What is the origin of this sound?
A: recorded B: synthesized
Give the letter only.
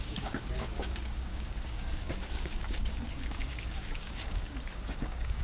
B